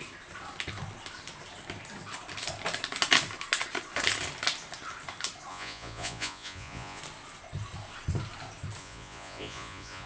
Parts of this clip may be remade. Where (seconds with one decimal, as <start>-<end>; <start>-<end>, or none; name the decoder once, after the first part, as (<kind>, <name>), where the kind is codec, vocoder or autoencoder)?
5.5-7.0 (vocoder, Vocos); 8.8-10.1